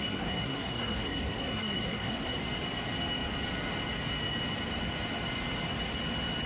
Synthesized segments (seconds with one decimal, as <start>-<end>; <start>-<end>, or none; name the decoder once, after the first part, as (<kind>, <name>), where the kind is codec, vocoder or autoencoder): 0.0-2.4 (codec, SNAC)